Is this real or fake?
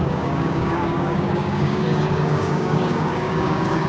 fake